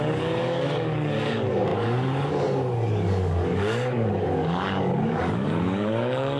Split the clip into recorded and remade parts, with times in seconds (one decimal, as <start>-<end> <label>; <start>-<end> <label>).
0.0-6.4 remade